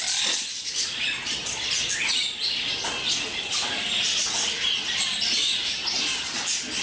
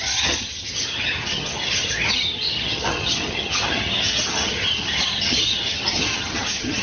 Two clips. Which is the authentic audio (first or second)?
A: first